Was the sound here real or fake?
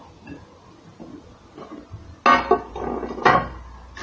real